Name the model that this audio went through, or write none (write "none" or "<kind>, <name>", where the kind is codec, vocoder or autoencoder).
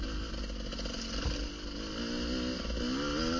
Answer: none